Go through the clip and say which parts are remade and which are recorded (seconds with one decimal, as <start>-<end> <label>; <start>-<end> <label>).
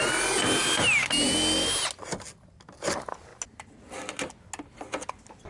0.0-5.5 recorded